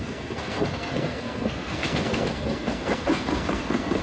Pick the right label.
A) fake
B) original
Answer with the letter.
A